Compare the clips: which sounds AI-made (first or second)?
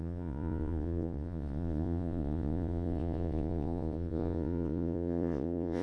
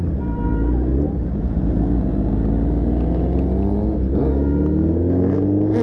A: first